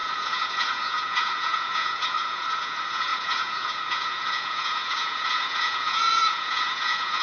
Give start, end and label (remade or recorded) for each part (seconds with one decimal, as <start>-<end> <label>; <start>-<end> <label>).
0.0-7.2 remade